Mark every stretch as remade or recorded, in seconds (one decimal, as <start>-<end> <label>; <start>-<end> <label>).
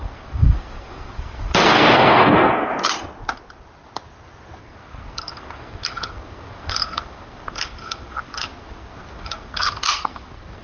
0.0-2.7 remade; 2.7-4.6 recorded; 4.6-10.6 remade